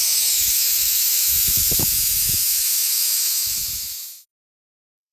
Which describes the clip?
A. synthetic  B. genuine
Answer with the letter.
A